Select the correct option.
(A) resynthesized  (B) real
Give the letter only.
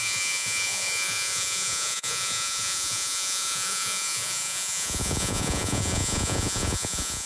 A